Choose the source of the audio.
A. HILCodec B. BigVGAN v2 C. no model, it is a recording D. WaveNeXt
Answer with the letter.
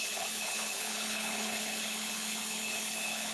A